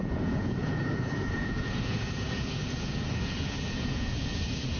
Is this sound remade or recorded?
remade